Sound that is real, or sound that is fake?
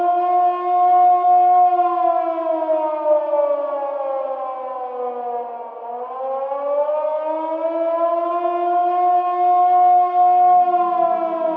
real